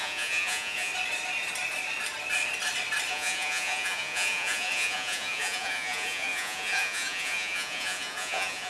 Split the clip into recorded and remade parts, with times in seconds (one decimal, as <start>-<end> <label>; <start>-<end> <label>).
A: 0.0-0.9 remade; 0.9-3.1 recorded; 3.1-8.7 remade